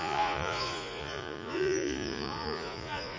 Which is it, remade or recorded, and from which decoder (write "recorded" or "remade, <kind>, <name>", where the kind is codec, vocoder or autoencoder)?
remade, vocoder, Vocos